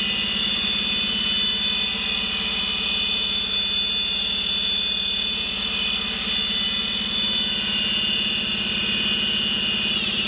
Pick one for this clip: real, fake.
real